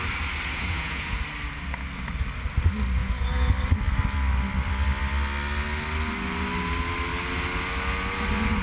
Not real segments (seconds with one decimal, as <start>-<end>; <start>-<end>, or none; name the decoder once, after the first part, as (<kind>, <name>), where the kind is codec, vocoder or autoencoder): 0.5-1.1 (vocoder, Vocos); 3.0-3.5